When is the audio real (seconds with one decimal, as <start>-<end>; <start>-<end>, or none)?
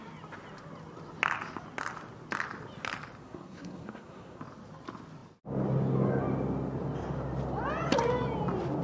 0.0-3.2; 4.4-8.8